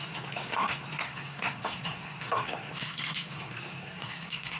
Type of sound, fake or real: fake